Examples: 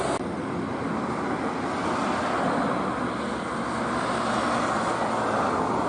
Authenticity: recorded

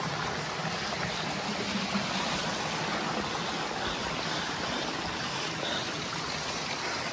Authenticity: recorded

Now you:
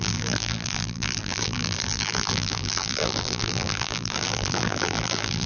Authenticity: remade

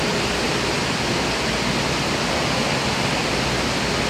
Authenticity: recorded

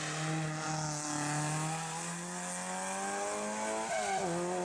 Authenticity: recorded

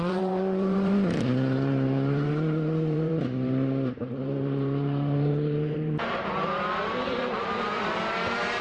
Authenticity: remade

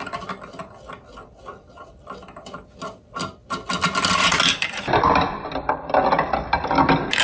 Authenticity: recorded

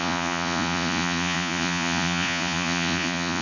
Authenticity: remade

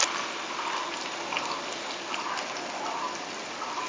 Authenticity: recorded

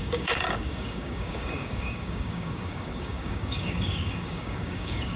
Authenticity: remade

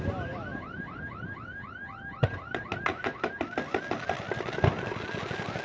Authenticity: recorded